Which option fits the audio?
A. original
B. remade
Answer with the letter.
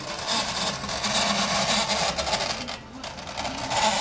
A